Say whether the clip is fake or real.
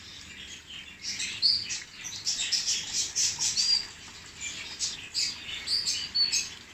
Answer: real